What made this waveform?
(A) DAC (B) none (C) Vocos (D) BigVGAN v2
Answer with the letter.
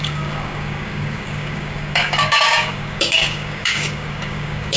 A